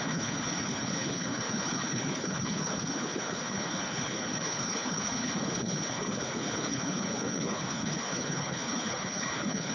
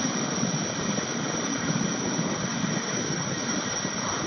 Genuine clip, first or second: second